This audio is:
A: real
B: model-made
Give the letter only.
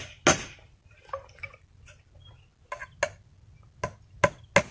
A